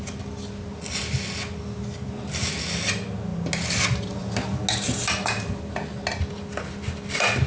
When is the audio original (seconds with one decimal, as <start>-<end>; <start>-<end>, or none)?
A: 0.0-7.5